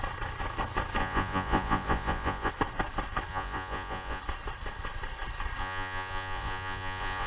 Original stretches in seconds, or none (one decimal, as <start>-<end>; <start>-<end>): 0.0-1.0; 2.5-3.3; 4.2-5.6